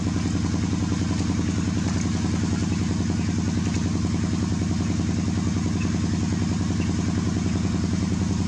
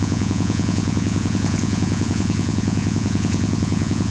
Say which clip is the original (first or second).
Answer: first